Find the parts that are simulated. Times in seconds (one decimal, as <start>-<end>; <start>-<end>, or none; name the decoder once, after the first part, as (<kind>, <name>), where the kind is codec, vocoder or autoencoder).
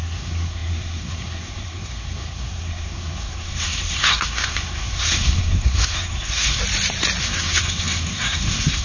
0.0-6.6 (codec, SNAC); 7.2-8.8